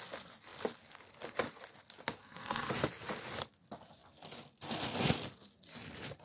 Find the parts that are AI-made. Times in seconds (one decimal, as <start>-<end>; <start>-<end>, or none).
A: 2.2-2.7